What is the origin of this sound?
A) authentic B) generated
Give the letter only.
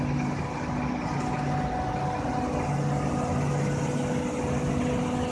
A